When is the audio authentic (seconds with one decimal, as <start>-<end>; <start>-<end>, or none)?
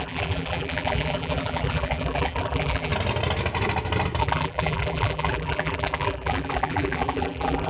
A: 2.9-4.2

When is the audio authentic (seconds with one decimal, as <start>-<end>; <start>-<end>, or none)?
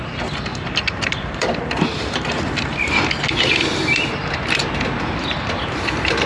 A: 0.0-0.5; 3.0-6.3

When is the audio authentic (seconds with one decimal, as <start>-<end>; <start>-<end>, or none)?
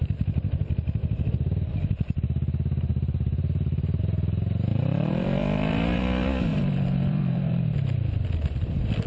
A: 0.0-2.9; 4.0-4.7; 6.0-6.5; 7.6-9.1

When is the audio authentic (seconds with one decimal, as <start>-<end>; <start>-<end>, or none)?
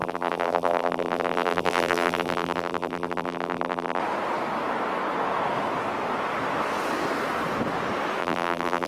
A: 4.0-8.2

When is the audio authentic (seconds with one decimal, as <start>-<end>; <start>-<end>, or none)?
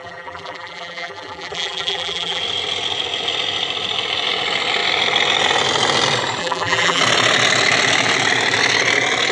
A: 2.4-6.4; 7.0-9.3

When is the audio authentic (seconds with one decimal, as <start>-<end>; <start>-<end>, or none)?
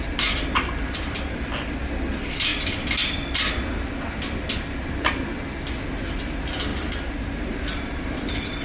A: 0.0-6.7; 7.9-8.6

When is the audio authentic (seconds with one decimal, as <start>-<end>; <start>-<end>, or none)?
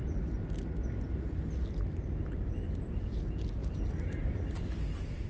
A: 0.0-3.6; 4.4-5.3